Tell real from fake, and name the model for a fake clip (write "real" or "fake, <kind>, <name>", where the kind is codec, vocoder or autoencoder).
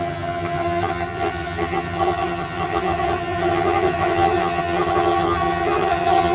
fake, vocoder, HiFi-GAN